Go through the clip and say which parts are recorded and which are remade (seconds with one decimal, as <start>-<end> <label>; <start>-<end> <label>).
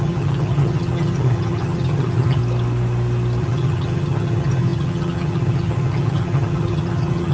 0.0-2.4 remade; 2.4-3.4 recorded; 3.4-7.3 remade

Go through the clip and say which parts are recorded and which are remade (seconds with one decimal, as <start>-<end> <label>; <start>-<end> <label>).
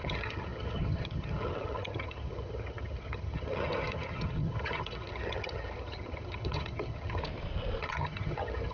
0.0-7.2 remade; 7.2-7.8 recorded; 7.8-8.7 remade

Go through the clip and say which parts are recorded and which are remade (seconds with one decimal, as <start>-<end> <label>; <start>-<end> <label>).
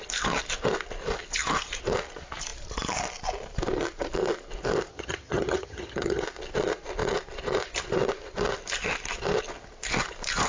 0.0-4.9 recorded; 4.9-6.2 remade; 6.2-10.5 recorded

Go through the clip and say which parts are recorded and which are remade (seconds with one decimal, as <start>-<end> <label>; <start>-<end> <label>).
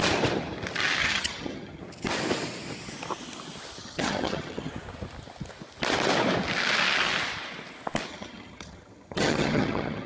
0.0-1.0 recorded; 1.0-1.8 remade; 1.8-3.8 recorded; 3.8-4.7 remade; 4.7-8.1 recorded; 8.1-10.1 remade